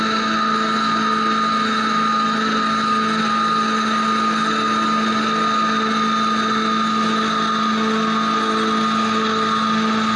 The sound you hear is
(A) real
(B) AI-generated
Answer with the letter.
A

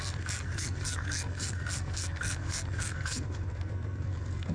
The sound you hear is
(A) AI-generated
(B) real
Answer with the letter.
A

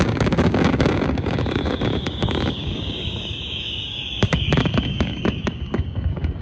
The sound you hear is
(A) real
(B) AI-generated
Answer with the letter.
B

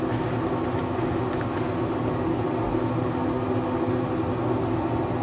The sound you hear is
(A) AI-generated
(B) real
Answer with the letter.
B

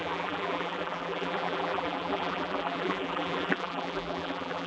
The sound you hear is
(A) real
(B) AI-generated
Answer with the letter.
B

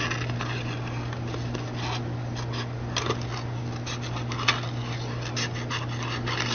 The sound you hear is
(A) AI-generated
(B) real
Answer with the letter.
B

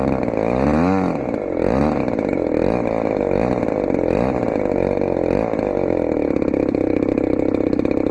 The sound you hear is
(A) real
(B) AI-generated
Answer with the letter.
A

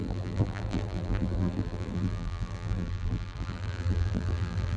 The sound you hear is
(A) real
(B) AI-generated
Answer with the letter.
B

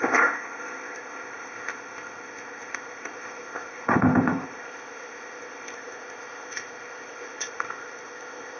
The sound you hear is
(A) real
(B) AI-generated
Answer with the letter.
B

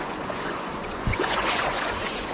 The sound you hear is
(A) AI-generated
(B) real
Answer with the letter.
A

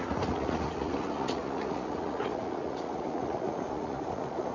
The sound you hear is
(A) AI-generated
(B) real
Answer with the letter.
A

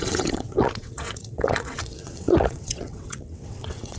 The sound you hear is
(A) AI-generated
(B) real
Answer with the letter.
A